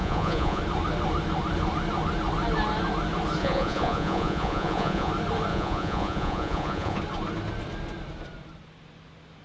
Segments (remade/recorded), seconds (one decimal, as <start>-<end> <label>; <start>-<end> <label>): 0.0-0.6 remade; 0.6-3.4 recorded; 3.4-5.1 remade; 5.1-5.5 recorded; 5.5-7.0 remade; 7.0-9.4 recorded